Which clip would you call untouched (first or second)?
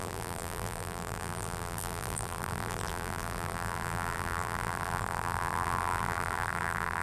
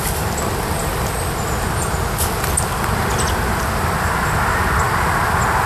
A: second